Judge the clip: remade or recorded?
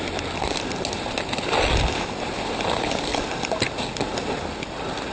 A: recorded